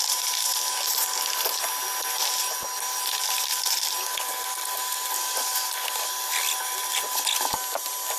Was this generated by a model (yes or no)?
no